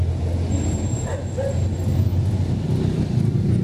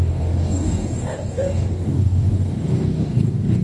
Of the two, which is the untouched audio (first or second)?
first